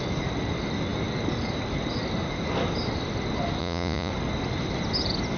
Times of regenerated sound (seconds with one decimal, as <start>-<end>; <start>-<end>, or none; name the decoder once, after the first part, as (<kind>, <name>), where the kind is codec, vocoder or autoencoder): 3.6-4.1 (vocoder, Vocos)